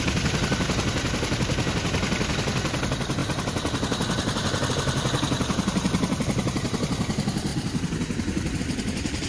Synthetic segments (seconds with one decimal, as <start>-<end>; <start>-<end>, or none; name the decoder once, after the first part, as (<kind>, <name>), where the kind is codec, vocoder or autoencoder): none